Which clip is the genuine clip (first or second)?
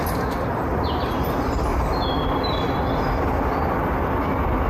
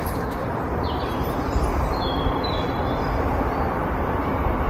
first